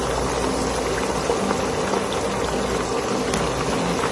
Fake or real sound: real